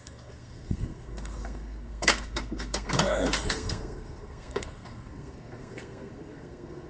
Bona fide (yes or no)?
no